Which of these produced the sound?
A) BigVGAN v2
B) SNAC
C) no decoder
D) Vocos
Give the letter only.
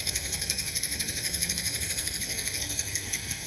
B